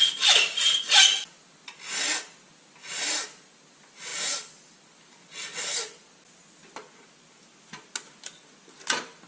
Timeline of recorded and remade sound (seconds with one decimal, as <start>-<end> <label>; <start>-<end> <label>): 0.0-9.3 recorded